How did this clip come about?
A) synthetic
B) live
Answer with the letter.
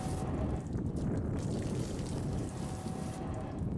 B